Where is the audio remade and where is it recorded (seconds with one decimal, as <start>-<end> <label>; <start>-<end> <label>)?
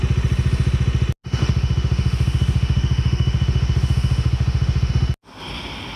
0.0-1.4 recorded; 1.4-4.9 remade; 4.9-6.0 recorded